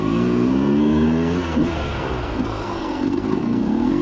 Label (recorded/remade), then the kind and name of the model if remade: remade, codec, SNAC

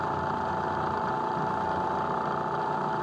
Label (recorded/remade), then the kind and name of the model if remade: recorded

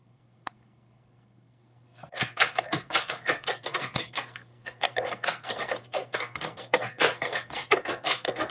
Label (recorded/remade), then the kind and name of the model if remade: remade, codec, SNAC